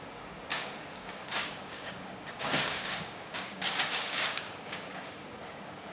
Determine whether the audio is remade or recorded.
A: remade